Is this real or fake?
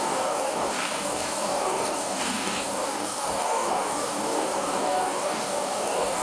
fake